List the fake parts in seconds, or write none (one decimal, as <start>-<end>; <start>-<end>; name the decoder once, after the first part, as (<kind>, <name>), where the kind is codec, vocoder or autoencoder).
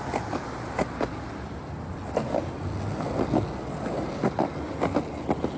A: none